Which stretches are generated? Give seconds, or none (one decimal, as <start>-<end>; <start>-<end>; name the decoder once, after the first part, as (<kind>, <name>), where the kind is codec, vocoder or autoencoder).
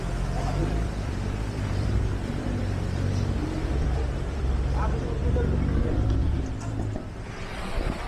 0.6-4.5 (vocoder, BigVGAN v2); 5.2-6.4